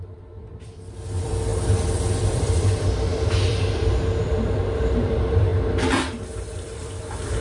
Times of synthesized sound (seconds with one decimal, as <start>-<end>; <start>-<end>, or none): 0.0-1.5; 2.2-5.5; 6.6-7.4